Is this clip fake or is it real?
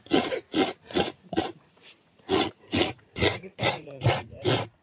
fake